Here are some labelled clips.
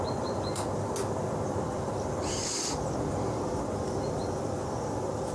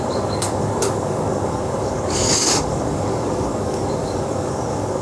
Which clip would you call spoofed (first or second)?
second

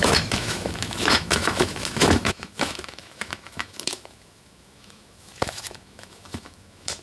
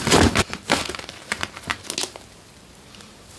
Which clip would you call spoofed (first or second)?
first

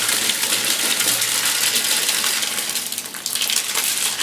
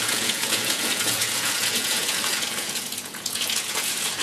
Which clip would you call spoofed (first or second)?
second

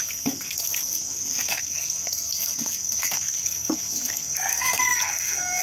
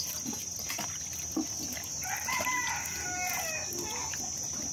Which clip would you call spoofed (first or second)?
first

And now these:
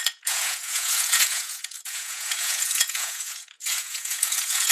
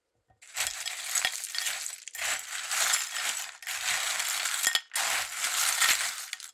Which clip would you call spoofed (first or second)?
first